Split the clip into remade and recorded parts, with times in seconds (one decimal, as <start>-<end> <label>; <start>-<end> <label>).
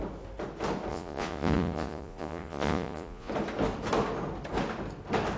0.0-0.9 recorded; 0.9-3.3 remade; 3.3-5.4 recorded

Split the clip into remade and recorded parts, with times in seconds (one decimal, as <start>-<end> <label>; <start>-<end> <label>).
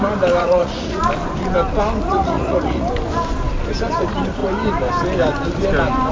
0.0-0.4 recorded; 0.4-1.0 remade; 1.0-2.1 recorded; 2.1-2.9 remade; 2.9-6.1 recorded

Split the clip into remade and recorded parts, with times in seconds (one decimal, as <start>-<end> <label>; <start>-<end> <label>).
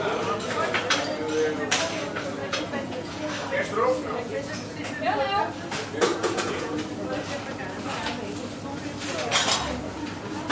0.0-2.4 recorded; 2.4-3.2 remade; 3.2-4.1 recorded; 4.1-4.8 remade; 4.8-6.1 recorded; 6.1-6.7 remade; 6.7-10.5 recorded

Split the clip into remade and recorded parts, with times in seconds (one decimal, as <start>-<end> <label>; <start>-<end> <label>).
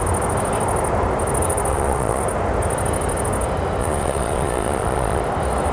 0.0-1.7 recorded; 1.7-2.2 remade; 2.2-3.8 recorded; 3.8-5.2 remade; 5.2-5.7 recorded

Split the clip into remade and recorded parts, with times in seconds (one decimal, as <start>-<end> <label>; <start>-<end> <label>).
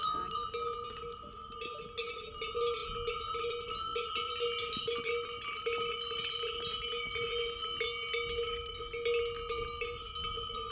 0.0-10.7 recorded